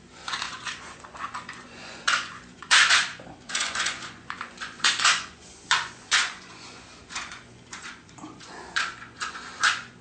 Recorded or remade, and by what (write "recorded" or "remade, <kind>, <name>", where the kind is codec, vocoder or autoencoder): remade, vocoder, Vocos